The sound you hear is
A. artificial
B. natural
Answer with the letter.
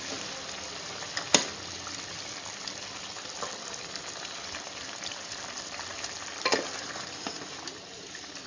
B